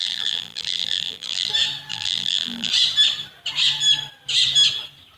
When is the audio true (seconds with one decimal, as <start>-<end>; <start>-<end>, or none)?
1.5-1.9; 2.7-5.2